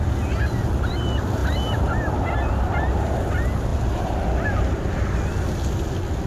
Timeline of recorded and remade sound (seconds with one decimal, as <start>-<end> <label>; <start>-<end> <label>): 0.0-6.3 recorded